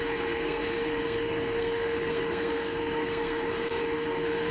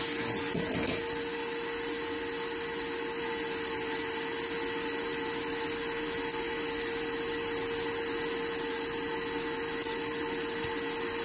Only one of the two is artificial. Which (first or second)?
first